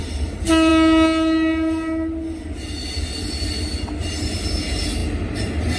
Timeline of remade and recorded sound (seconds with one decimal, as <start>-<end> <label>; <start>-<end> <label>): 0.0-5.8 recorded